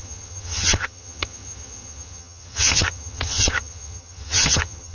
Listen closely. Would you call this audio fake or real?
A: fake